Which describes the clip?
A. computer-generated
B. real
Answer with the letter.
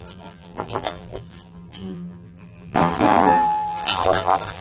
A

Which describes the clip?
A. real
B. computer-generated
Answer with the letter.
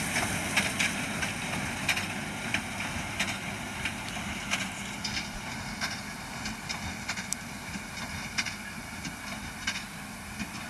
A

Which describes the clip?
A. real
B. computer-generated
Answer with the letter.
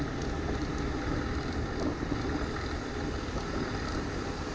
A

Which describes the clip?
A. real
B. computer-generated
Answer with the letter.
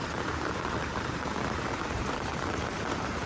B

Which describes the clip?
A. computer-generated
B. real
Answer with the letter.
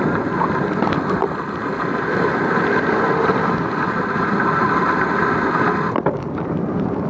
B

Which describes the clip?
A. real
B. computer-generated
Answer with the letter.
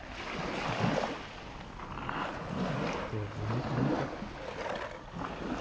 A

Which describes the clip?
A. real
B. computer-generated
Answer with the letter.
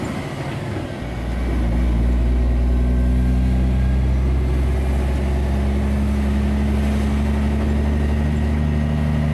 A